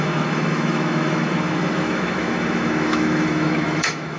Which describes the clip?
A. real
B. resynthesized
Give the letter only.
B